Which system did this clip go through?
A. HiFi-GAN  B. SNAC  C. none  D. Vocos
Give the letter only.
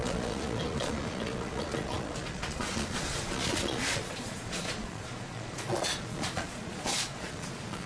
D